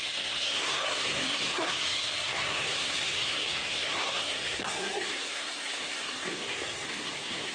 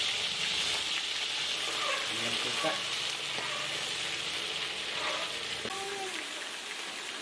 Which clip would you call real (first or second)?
second